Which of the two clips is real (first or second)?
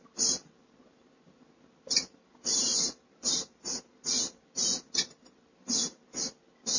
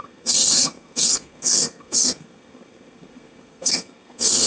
first